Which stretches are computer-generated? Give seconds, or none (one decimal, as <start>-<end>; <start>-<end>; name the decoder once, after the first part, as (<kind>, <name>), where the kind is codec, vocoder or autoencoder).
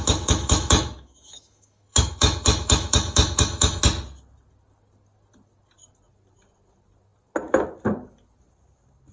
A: 0.0-3.8 (autoencoder, DAC-VAE)